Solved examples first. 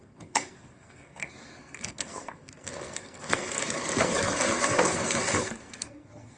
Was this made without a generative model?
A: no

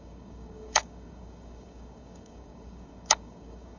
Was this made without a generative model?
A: no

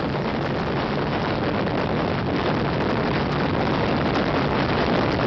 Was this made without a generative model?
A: yes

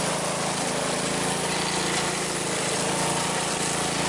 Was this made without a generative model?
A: yes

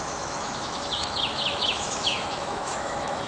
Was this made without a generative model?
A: no